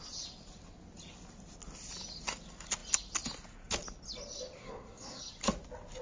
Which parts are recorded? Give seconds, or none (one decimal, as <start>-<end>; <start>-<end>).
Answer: 0.0-4.6; 5.2-6.0